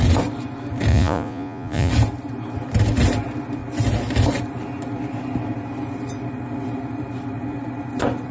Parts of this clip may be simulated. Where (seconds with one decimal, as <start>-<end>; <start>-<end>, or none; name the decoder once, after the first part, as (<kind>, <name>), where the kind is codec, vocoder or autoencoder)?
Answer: 0.9-1.9 (vocoder, Vocos)